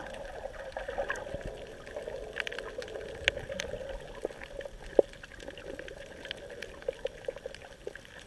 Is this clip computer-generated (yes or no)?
no